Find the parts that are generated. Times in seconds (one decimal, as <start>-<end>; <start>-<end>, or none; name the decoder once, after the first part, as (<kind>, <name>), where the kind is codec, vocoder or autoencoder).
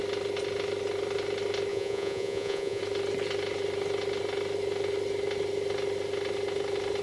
1.7-2.8 (vocoder, Vocos)